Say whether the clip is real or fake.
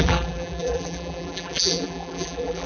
fake